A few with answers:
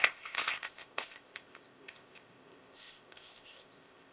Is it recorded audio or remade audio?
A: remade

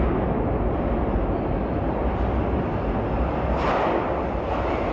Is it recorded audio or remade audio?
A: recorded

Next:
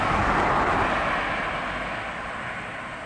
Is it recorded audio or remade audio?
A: recorded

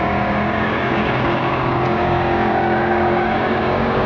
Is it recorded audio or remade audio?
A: remade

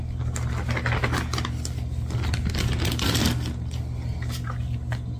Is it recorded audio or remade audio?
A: recorded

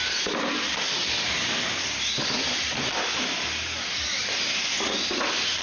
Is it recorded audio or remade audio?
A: recorded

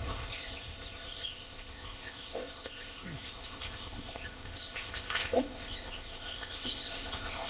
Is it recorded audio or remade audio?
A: remade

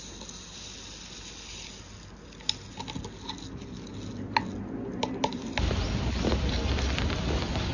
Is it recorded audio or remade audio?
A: recorded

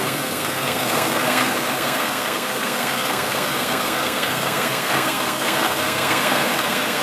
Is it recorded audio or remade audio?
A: remade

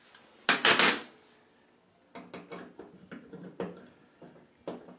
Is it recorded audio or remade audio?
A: recorded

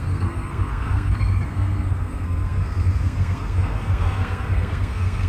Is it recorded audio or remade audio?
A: remade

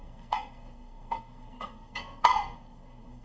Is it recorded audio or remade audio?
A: remade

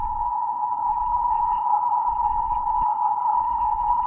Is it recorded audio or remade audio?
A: remade